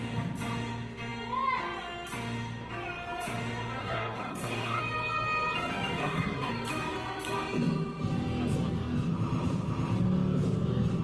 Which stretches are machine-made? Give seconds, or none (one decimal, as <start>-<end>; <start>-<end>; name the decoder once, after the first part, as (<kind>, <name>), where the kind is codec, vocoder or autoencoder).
3.8-4.8 (codec, SNAC); 6.0-6.5